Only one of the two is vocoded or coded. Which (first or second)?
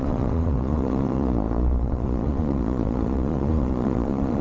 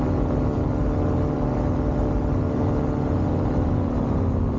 first